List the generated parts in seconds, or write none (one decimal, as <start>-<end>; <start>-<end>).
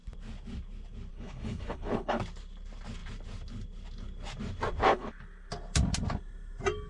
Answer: 1.1-2.2; 4.9-5.5